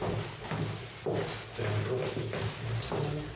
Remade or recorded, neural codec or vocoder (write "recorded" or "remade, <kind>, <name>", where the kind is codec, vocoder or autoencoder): recorded